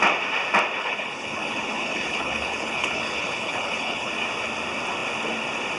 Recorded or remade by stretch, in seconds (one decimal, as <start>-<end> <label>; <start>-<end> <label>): 0.0-0.8 recorded; 0.8-4.1 remade; 4.1-5.8 recorded